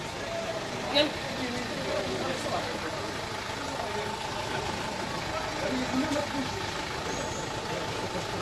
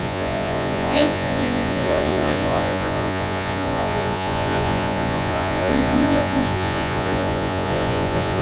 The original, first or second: first